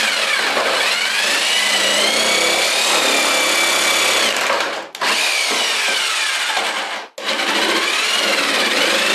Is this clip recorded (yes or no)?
yes